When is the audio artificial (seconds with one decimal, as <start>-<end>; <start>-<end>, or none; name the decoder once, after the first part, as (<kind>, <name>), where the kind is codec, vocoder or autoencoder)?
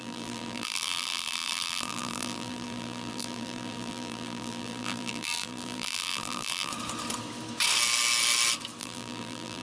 0.0-6.7 (vocoder, BigVGAN v2); 8.8-9.6